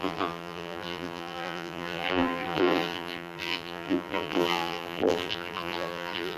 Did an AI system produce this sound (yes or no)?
yes